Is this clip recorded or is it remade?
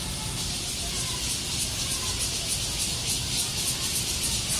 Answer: recorded